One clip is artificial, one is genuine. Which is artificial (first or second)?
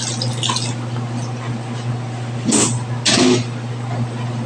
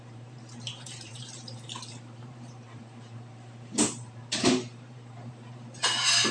second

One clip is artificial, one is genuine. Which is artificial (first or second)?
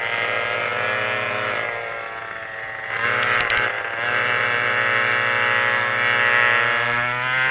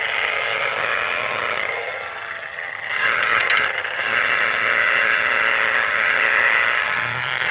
second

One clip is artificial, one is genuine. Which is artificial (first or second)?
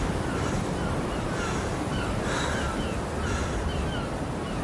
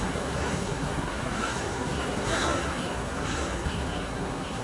second